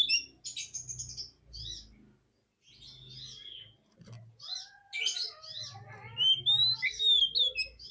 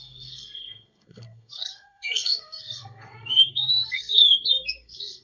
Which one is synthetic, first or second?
second